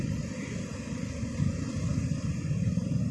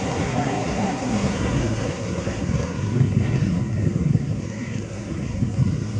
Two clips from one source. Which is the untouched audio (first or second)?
first